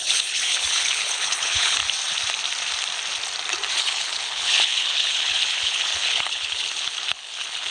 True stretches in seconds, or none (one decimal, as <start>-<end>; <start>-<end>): 1.8-3.8